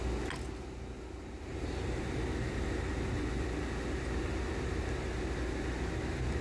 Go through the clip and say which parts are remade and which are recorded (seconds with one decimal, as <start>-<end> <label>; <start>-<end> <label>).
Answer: 0.0-1.5 recorded; 1.5-2.9 remade; 2.9-6.4 recorded